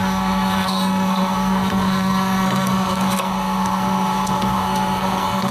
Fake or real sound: fake